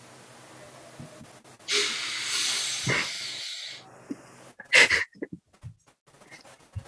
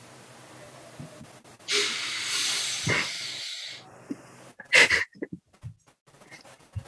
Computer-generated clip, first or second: second